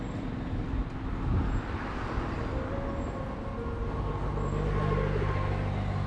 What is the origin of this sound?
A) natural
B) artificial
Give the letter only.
A